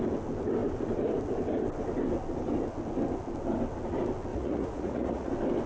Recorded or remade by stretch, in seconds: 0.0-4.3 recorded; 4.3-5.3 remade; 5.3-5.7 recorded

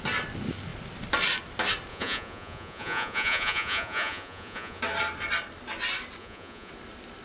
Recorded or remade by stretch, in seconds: 0.0-1.9 recorded; 1.9-4.8 remade; 4.8-6.2 recorded; 6.2-6.7 remade; 6.7-7.2 recorded

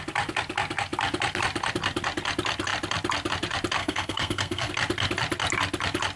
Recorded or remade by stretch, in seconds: 0.0-3.8 recorded; 3.8-4.7 remade; 4.7-6.2 recorded

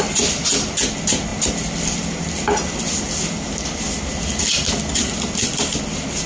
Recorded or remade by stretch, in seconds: 0.0-6.3 recorded

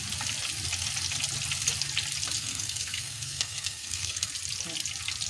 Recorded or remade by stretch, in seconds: 0.0-2.4 recorded; 2.4-4.3 remade; 4.3-5.3 recorded

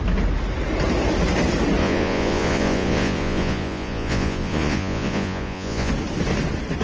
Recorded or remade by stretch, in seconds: 0.0-1.8 recorded; 1.8-5.9 remade; 5.9-6.8 recorded

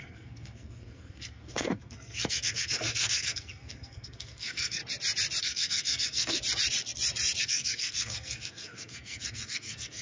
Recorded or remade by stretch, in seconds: 0.0-4.8 remade; 4.8-5.4 recorded; 5.4-6.4 remade; 6.4-7.4 recorded; 7.4-10.0 remade